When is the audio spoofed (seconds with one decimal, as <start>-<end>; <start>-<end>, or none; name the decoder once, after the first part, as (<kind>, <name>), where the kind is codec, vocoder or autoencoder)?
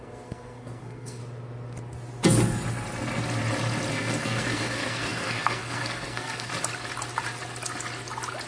0.0-1.2 (codec, SNAC); 3.9-6.5